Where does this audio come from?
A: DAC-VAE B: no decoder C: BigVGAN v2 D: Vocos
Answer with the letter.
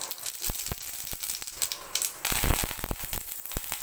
B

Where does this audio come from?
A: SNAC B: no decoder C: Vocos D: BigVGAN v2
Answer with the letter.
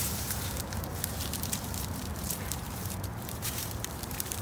D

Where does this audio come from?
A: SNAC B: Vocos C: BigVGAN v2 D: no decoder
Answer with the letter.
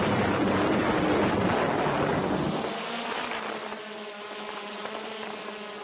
D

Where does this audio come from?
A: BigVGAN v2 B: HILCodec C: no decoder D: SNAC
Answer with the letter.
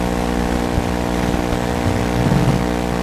C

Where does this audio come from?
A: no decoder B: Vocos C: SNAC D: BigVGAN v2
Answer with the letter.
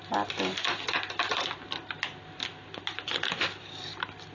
A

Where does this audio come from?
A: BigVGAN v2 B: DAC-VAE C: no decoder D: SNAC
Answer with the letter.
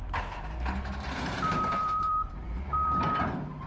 A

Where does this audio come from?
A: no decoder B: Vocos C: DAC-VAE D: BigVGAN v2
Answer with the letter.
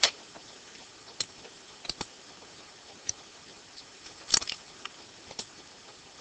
D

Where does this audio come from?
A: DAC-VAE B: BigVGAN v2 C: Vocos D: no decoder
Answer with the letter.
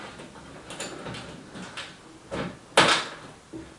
D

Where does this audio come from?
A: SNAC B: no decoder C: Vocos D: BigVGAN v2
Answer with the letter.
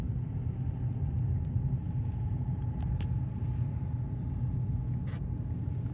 B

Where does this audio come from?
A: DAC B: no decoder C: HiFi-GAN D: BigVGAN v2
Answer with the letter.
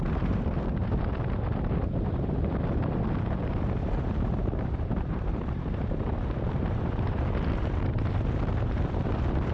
D